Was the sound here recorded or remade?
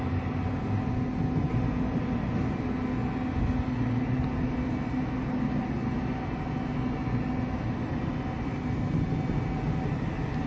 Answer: recorded